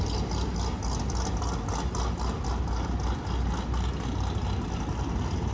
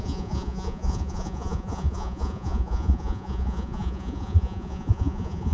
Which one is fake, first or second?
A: second